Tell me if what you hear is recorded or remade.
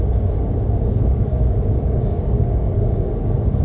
remade